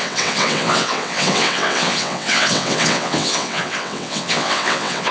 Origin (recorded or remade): remade